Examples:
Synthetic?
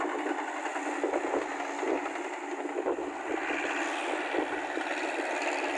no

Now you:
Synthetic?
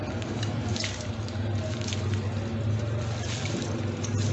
no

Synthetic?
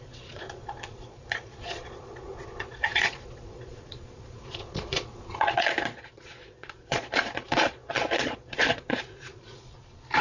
yes